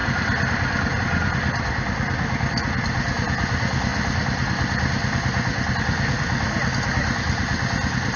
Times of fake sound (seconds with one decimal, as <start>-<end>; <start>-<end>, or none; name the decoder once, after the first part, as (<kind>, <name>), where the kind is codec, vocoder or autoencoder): none

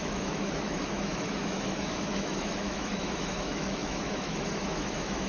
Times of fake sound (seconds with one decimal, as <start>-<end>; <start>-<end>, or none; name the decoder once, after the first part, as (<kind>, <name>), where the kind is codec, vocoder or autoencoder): 0.0-5.3 (autoencoder, DAC-VAE)

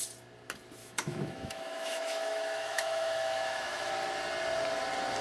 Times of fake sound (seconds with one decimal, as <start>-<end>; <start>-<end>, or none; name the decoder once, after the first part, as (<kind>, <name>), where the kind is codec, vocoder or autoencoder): 0.8-3.9 (autoencoder, DAC-VAE)

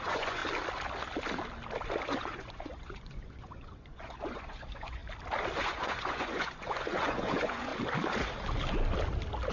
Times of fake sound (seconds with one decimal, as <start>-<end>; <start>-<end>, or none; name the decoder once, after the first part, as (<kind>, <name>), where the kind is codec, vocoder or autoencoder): 0.0-0.4 (vocoder, Vocos); 2.2-5.0; 5.6-7.7

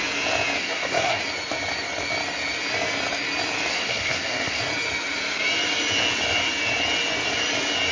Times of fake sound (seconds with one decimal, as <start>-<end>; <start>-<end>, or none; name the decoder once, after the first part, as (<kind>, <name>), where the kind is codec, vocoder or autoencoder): 0.6-1.2 (codec, SNAC); 3.7-4.6